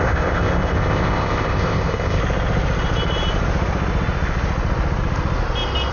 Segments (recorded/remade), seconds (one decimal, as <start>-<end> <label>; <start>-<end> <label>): 0.0-2.2 remade; 2.2-5.9 recorded